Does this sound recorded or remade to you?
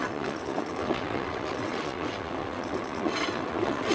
remade